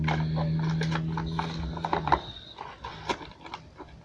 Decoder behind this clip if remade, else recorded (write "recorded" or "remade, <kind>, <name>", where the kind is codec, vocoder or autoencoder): recorded